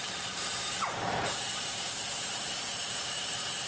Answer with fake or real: fake